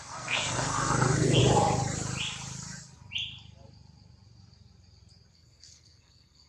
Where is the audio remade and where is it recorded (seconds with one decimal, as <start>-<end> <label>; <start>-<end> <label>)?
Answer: 0.0-1.4 remade; 1.4-5.3 recorded; 5.3-6.5 remade

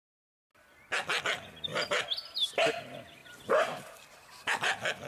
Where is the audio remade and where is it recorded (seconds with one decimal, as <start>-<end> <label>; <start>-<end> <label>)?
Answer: 0.0-0.5 remade; 0.5-1.2 recorded; 1.2-1.7 remade; 1.7-2.7 recorded; 2.7-5.1 remade

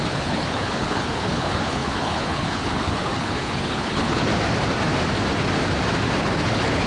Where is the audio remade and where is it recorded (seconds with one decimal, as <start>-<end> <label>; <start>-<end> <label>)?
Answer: 0.0-4.3 remade; 4.3-6.2 recorded; 6.2-6.9 remade

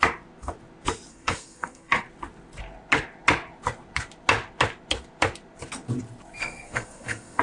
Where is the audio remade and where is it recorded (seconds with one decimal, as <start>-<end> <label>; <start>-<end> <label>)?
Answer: 0.0-1.1 recorded; 1.1-2.0 remade; 2.0-6.4 recorded; 6.4-7.4 remade

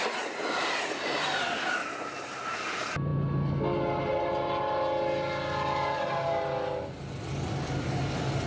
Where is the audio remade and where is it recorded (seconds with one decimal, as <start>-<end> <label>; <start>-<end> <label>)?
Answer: 0.0-8.5 recorded

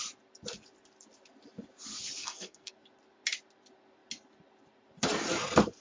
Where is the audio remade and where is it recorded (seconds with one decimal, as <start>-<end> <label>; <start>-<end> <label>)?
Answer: 0.0-2.2 recorded; 2.2-2.7 remade; 2.7-5.8 recorded